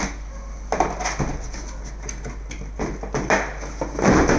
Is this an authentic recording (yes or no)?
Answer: yes